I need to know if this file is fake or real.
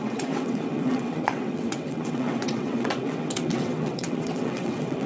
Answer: fake